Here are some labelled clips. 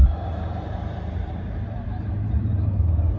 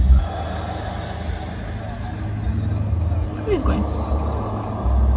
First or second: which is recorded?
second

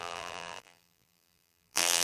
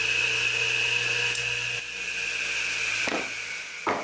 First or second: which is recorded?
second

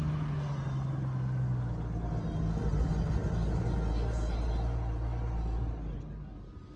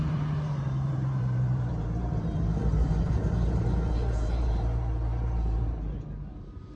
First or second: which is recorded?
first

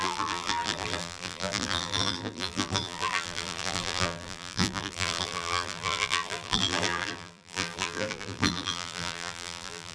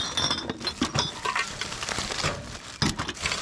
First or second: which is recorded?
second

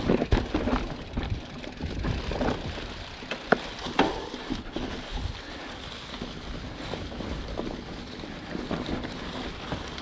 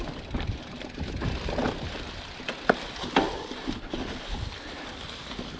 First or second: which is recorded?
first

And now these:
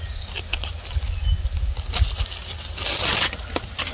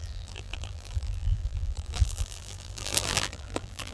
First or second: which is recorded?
first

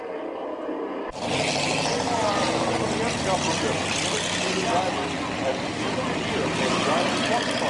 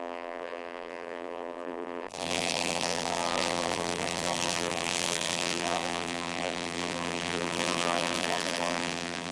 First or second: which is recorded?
first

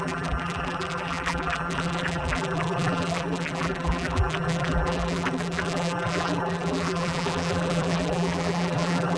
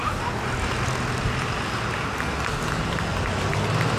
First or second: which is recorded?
second